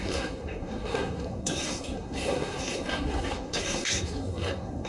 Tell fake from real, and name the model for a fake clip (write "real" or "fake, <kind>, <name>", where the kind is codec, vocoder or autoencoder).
fake, codec, SNAC